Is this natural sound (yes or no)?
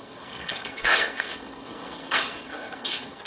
no